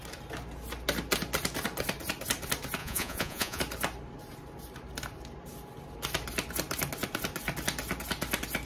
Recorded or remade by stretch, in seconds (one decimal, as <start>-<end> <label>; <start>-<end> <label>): 0.0-2.8 recorded; 2.8-3.6 remade; 3.6-8.7 recorded